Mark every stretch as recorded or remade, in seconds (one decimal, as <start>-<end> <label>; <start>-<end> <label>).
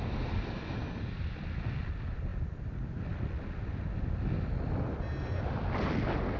0.0-6.4 recorded